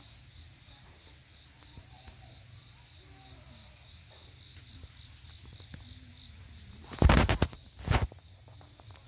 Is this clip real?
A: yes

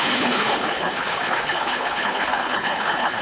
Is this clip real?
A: no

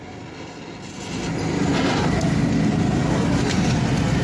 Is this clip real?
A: yes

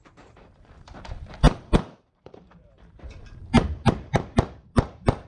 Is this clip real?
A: no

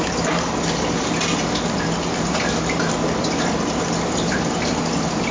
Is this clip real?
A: yes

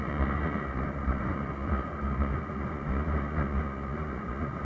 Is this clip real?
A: no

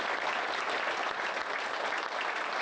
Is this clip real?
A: yes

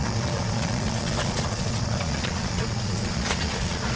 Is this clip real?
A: no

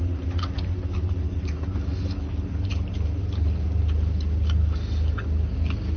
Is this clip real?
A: yes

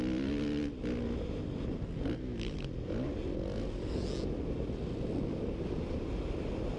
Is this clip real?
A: yes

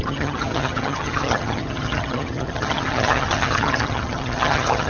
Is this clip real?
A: no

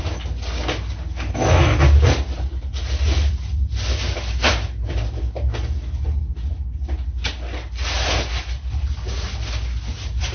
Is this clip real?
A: yes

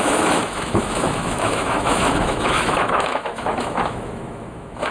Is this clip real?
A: no